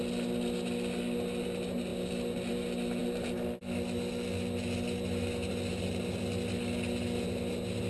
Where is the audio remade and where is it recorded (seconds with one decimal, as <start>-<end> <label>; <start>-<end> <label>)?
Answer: 0.0-7.9 recorded